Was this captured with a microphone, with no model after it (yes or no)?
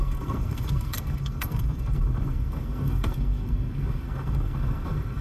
no